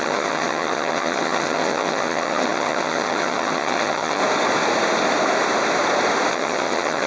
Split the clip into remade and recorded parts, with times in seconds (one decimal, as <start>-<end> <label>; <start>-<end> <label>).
0.0-4.2 remade; 4.2-6.3 recorded; 6.3-7.1 remade